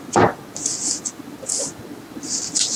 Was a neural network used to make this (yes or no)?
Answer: no